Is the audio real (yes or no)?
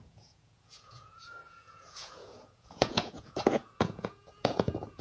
no